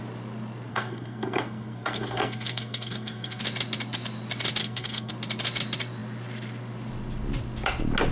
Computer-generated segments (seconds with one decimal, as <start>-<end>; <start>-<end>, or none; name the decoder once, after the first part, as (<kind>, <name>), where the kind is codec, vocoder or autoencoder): 0.7-3.4 (codec, SNAC); 4.6-5.1